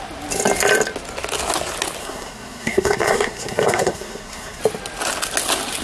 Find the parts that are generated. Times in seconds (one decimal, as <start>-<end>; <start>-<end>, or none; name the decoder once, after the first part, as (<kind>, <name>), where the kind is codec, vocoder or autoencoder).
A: 2.0-4.6 (codec, SNAC)